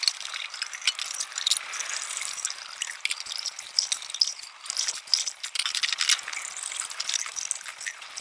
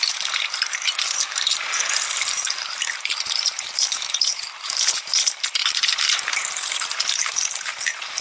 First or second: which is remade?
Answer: second